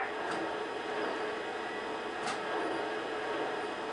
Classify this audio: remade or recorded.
recorded